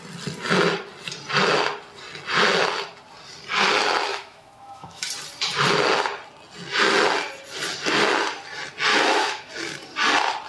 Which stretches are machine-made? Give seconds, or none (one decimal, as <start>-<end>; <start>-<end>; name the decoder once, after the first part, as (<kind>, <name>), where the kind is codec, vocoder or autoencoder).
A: 4.1-5.1 (autoencoder, DAC-VAE); 8.9-9.5